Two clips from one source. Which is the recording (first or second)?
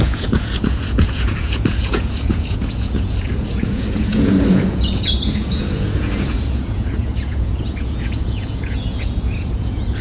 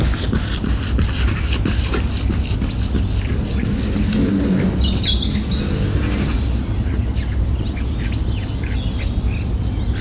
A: second